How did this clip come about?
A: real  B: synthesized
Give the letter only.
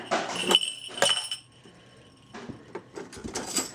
A